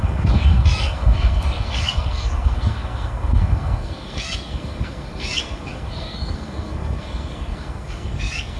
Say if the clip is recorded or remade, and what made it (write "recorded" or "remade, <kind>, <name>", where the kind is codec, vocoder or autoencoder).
remade, codec, SNAC